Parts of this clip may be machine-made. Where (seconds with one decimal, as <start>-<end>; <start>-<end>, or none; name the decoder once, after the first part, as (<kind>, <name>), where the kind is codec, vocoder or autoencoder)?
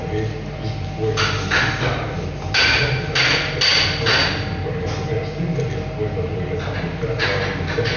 none